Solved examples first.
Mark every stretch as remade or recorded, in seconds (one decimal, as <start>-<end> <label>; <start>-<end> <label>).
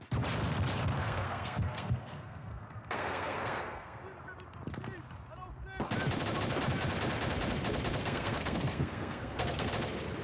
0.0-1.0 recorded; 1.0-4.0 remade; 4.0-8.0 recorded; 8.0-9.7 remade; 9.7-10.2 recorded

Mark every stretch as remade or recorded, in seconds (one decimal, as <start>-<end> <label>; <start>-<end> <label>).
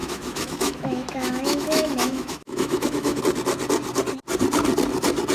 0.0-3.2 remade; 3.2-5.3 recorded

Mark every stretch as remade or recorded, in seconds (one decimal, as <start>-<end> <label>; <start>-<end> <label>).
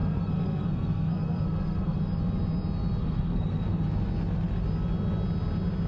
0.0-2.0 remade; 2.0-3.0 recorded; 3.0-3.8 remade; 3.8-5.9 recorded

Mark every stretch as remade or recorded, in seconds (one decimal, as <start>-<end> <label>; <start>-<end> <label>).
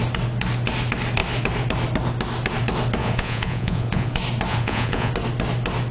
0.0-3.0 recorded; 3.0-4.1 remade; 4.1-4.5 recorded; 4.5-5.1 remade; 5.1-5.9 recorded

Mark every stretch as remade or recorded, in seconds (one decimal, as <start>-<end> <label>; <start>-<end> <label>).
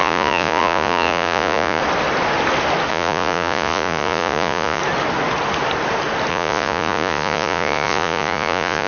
0.0-1.8 remade; 1.8-2.9 recorded; 2.9-4.8 remade; 4.8-6.3 recorded; 6.3-8.9 remade